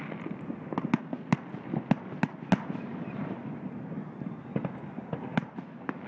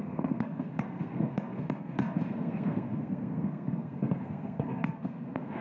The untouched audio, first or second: first